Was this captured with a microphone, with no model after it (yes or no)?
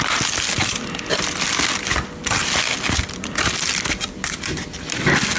yes